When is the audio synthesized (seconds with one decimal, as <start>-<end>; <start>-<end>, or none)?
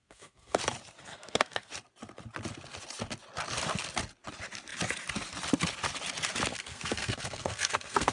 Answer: 0.0-0.6; 1.1-1.7; 6.5-8.1